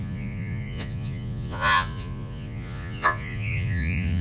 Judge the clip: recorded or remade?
remade